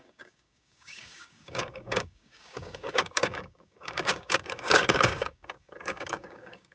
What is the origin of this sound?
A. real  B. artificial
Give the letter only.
B